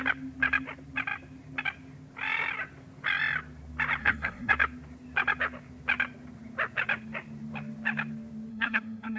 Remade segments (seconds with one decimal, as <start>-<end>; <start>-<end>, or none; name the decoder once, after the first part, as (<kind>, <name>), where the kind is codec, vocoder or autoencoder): 4.0-4.5 (codec, SNAC); 8.5-9.2